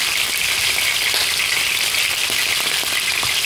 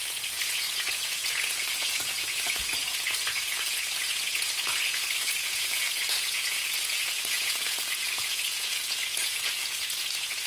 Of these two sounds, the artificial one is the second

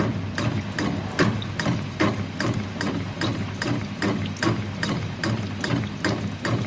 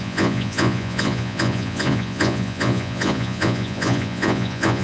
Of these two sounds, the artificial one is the second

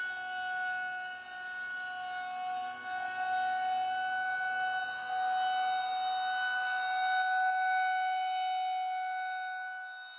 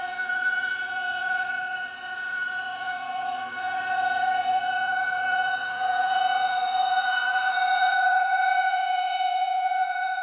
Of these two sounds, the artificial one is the second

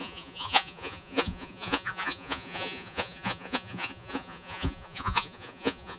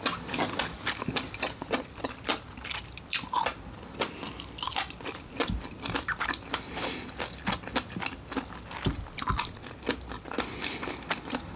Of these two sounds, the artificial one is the first